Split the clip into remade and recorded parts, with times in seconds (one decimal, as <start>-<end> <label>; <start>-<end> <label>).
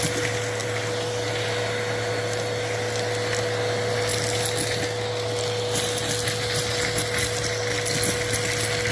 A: 0.0-8.9 recorded